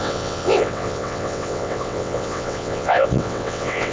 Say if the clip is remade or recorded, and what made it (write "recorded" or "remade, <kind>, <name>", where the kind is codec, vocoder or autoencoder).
remade, vocoder, WaveNeXt